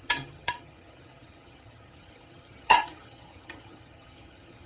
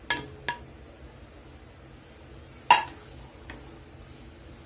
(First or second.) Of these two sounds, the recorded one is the second